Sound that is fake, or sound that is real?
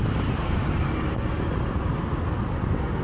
real